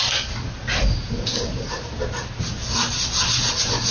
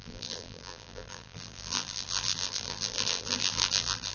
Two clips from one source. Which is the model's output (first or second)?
second